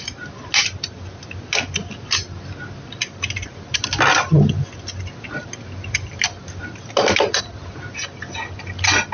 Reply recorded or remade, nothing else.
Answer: recorded